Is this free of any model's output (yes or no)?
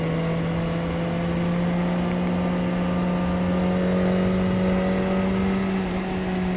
yes